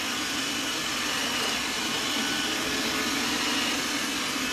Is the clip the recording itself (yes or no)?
yes